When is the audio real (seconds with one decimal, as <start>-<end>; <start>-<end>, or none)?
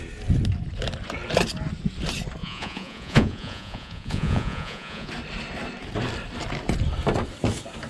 0.0-2.4; 5.1-7.9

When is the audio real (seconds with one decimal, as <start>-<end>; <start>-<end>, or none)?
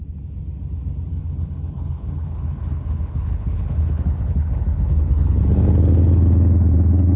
0.0-1.1; 5.4-7.2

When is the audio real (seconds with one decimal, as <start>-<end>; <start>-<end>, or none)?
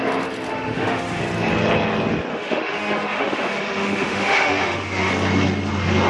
0.0-0.5; 1.2-2.3; 5.1-6.1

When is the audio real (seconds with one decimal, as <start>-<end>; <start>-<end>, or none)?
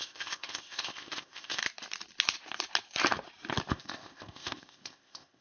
1.6-3.7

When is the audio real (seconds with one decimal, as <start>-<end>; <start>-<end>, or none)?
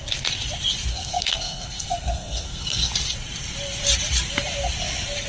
0.0-0.9; 2.9-5.3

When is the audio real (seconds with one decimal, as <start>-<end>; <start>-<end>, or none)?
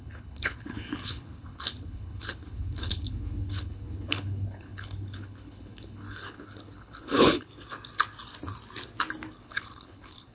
7.5-9.4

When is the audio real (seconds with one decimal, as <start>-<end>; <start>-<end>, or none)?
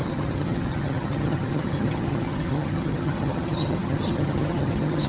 none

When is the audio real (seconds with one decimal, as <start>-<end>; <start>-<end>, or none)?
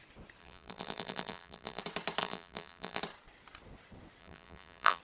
0.0-0.4; 1.8-2.2; 3.0-4.2